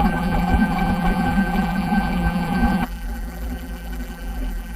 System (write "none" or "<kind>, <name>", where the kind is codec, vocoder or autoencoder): vocoder, BigVGAN v2